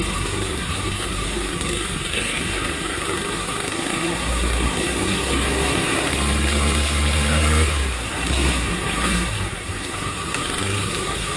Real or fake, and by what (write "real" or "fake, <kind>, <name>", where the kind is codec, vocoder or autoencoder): fake, codec, SNAC